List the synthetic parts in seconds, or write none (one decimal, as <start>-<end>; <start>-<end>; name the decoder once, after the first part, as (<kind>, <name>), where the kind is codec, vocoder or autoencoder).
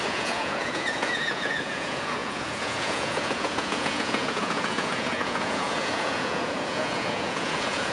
0.0-7.9 (vocoder, Vocos)